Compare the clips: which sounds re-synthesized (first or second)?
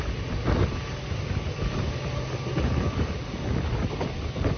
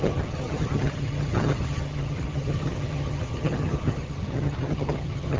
second